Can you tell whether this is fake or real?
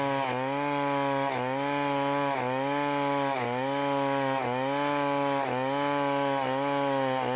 real